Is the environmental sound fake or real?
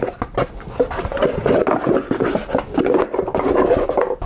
real